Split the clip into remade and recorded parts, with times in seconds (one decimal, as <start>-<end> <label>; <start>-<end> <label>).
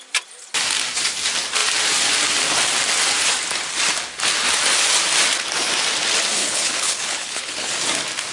0.0-6.4 recorded; 6.4-7.7 remade; 7.7-8.3 recorded